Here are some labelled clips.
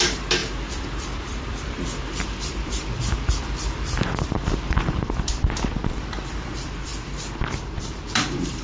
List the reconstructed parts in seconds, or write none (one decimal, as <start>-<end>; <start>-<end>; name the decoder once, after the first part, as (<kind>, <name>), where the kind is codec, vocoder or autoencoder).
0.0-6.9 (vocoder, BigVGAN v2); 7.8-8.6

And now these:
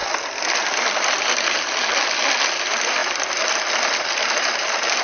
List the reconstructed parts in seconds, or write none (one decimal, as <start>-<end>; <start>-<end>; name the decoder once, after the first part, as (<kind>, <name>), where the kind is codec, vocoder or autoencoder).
none

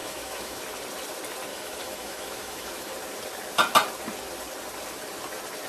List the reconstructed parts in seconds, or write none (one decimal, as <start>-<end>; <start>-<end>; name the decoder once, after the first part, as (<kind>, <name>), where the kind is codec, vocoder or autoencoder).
0.0-0.6 (autoencoder, DAC-VAE); 1.5-2.9